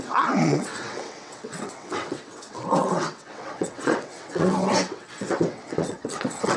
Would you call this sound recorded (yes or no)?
no